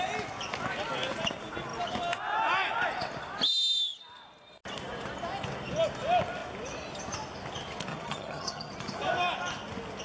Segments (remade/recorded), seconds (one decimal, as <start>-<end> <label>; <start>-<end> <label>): 0.0-7.9 recorded; 7.9-8.7 remade; 8.7-10.0 recorded